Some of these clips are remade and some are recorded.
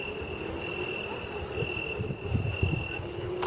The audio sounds recorded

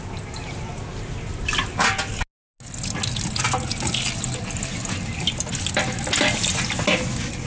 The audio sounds recorded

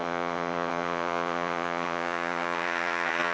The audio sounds remade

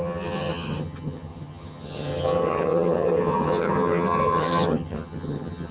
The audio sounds remade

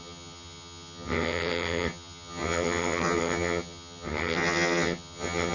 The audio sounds remade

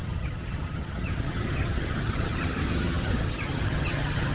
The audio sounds remade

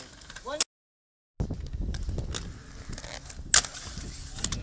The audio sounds recorded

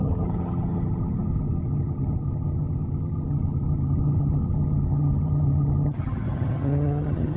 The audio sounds remade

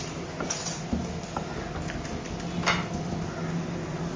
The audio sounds recorded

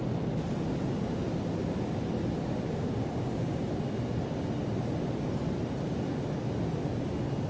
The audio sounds recorded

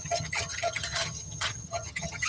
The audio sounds remade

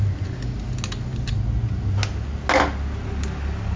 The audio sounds recorded